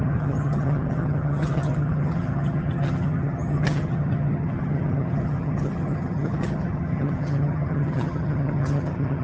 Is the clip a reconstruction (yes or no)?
yes